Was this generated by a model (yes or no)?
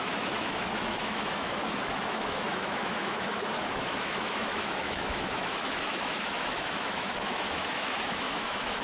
yes